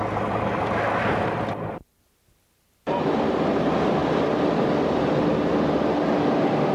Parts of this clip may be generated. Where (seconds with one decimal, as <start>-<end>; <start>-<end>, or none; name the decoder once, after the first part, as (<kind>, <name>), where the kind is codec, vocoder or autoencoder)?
none